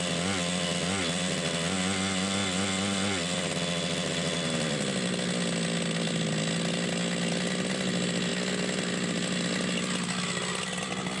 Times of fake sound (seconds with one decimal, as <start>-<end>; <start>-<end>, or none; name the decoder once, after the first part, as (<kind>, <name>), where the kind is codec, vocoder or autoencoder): none

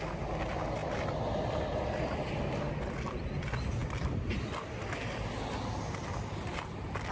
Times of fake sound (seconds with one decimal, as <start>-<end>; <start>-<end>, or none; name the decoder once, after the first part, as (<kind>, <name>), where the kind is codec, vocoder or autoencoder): none

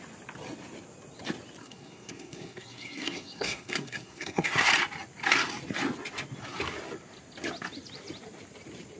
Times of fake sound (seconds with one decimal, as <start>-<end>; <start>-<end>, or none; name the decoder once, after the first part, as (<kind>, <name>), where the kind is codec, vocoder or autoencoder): 1.6-4.7 (codec, SNAC)

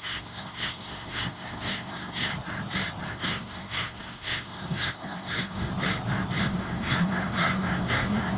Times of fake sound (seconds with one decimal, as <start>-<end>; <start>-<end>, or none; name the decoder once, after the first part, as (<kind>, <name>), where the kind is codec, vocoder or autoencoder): 0.0-2.3 (codec, SNAC); 3.1-5.7; 6.4-8.4

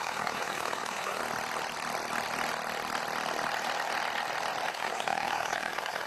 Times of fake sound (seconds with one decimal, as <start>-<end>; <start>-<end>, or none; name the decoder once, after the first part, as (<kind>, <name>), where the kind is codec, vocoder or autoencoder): 0.0-1.2 (codec, SNAC); 4.7-6.1

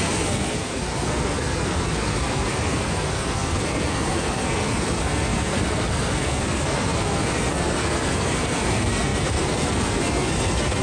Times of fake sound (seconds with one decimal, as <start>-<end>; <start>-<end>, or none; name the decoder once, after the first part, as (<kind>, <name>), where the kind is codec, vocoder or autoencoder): 0.0-10.8 (codec, SNAC)

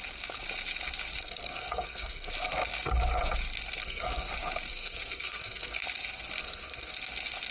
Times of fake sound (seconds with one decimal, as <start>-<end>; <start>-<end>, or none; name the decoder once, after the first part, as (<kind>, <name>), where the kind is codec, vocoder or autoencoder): 1.2-2.3 (codec, SNAC); 3.8-4.3; 4.7-5.8; 6.4-6.9

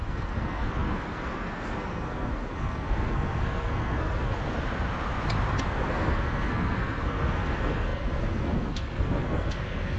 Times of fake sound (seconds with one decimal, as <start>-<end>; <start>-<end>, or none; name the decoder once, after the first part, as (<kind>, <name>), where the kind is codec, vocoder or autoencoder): 0.0-4.4 (codec, SNAC); 5.6-10.0